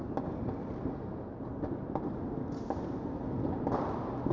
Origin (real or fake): real